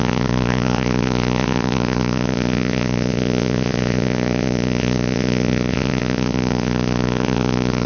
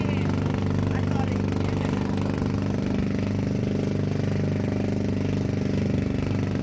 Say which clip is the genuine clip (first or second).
second